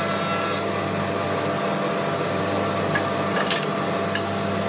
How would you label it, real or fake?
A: real